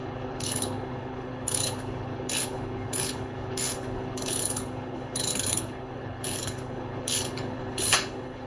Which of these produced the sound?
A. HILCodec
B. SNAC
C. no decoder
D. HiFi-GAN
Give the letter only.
A